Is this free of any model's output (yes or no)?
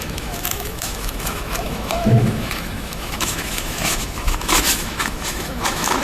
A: no